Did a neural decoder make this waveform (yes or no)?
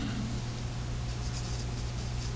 no